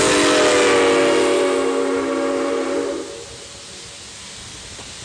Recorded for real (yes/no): yes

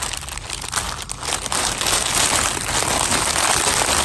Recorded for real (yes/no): yes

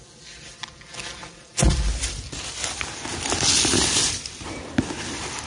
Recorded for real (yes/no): yes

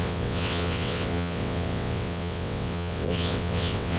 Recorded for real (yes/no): no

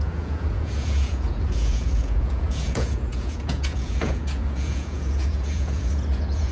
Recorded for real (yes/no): no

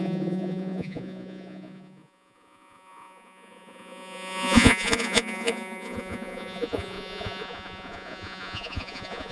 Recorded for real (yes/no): no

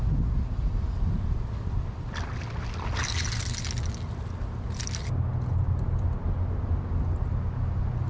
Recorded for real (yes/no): yes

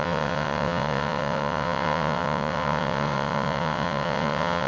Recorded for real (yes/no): no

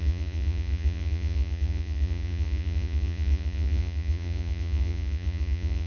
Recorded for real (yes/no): no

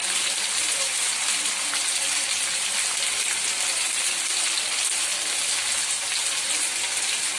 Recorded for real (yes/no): yes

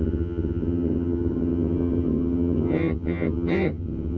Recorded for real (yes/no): no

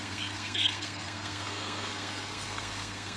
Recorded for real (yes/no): no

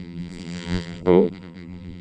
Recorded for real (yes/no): no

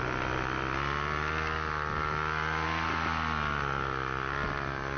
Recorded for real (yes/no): yes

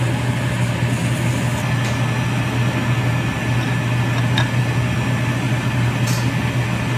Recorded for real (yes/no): yes